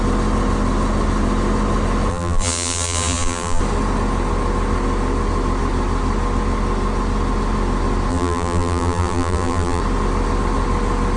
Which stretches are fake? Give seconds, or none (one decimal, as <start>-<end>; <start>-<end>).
2.1-3.6; 8.1-9.8